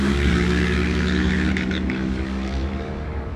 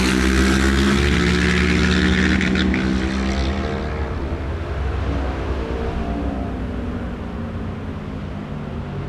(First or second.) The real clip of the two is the second